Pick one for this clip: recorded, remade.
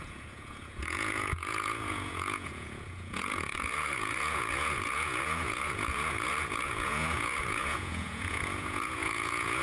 remade